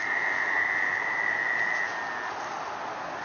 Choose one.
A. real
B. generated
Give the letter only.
A